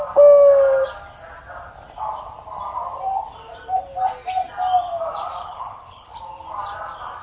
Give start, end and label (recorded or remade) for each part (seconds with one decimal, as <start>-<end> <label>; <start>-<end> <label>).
0.0-5.4 recorded; 5.4-6.2 remade; 6.2-7.2 recorded